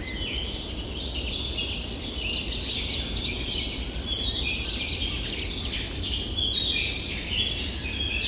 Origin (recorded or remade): recorded